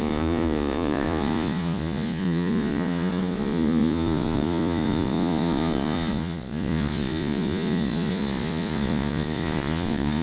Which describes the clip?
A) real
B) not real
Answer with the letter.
B